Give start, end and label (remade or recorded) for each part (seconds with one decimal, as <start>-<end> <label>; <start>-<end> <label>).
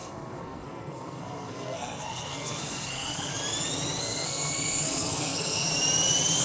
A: 0.0-3.3 remade; 3.3-4.0 recorded; 4.0-5.7 remade; 5.7-6.4 recorded